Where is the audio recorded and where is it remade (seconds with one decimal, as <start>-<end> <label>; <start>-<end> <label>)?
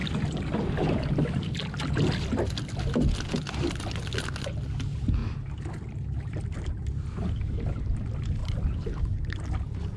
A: 0.0-10.0 recorded